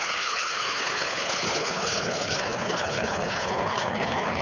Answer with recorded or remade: remade